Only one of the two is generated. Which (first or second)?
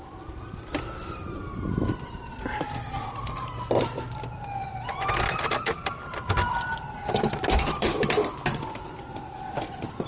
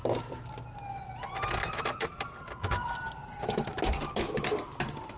first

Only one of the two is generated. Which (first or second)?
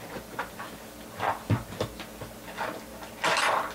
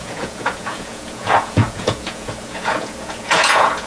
second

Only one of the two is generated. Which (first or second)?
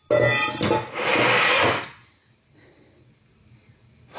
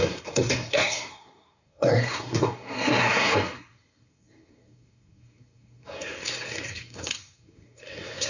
second